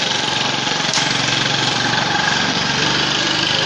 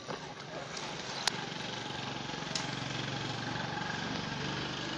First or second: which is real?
second